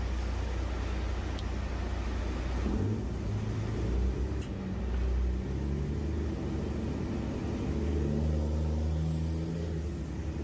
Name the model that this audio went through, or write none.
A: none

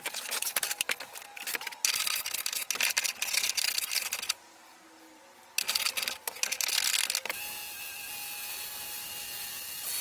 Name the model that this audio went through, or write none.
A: none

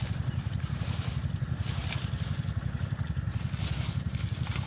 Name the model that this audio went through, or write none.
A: none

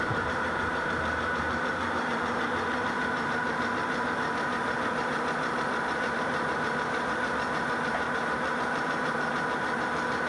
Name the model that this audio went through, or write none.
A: vocoder, BigVGAN v2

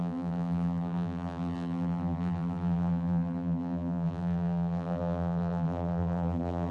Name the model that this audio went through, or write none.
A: vocoder, BigVGAN v2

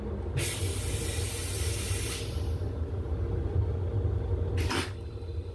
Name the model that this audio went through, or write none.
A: none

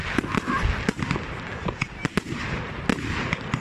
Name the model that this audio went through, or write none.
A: none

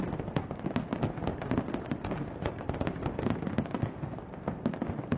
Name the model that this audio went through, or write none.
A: none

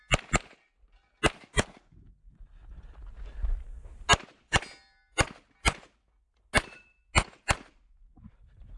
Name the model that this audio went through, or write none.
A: none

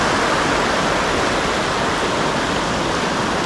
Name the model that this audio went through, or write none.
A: none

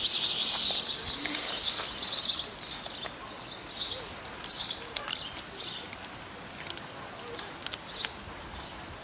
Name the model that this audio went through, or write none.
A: none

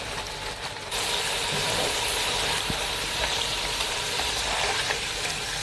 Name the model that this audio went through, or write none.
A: vocoder, BigVGAN v2